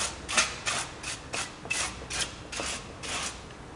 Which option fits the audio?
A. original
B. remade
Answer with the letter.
A